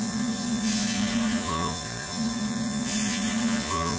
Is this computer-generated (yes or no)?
yes